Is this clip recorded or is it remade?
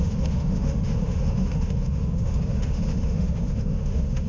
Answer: remade